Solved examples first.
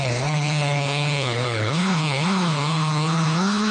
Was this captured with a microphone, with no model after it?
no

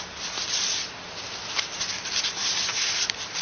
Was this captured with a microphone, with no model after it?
no